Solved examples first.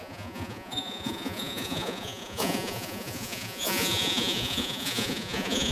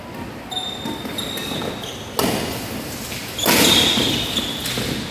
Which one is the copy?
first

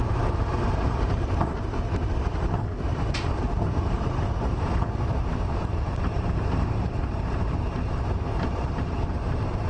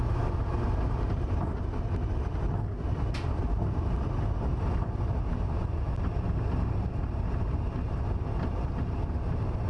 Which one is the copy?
first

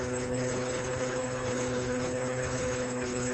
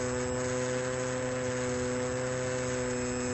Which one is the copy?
first